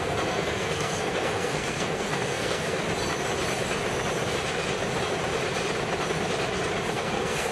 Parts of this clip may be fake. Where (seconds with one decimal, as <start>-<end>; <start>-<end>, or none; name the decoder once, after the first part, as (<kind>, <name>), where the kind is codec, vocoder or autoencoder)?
0.0-2.8 (codec, SNAC); 6.9-7.5